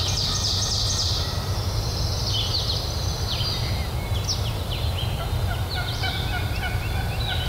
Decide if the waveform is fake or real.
real